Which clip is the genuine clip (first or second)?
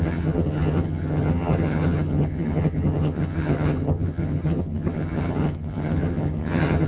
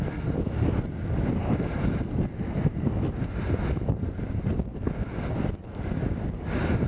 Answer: second